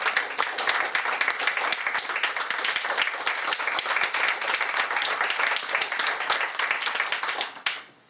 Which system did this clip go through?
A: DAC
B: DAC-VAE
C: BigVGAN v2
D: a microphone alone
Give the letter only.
D